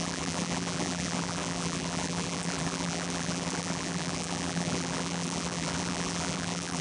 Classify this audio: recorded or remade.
remade